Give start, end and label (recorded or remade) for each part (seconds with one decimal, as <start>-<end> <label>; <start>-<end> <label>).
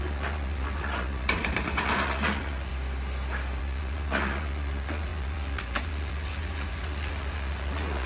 0.0-2.7 remade; 2.7-3.6 recorded; 3.6-8.1 remade